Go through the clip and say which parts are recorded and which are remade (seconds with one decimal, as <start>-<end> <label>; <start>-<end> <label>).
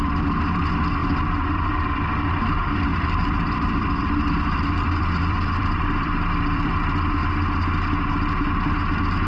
0.0-2.9 recorded; 2.9-6.7 remade; 6.7-9.3 recorded